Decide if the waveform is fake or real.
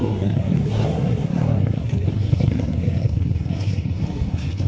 fake